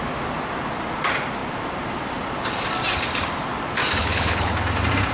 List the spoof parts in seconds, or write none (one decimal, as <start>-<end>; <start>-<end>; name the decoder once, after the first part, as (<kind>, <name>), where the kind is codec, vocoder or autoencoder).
4.0-4.5 (codec, HILCodec)